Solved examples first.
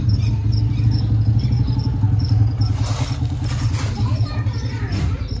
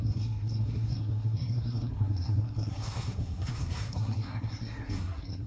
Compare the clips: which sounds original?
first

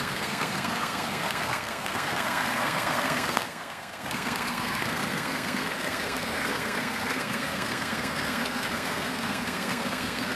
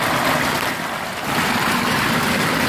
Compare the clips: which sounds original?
second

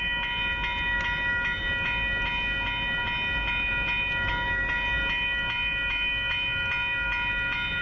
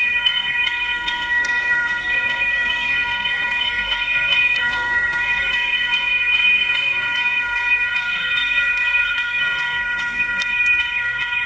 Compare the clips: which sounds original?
first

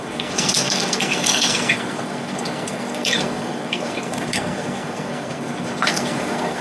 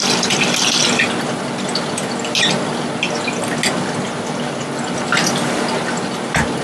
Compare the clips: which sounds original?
second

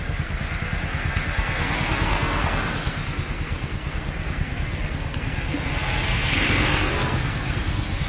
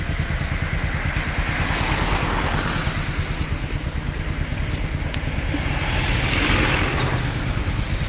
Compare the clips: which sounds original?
second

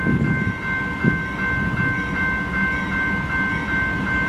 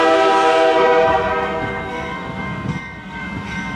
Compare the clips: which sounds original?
first